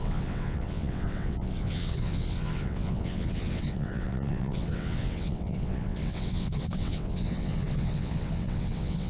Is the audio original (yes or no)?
no